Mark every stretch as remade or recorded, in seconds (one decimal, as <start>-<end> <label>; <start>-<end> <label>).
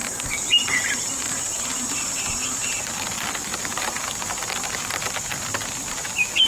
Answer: 0.0-1.9 remade; 1.9-3.5 recorded; 3.5-5.2 remade; 5.2-6.0 recorded; 6.0-6.5 remade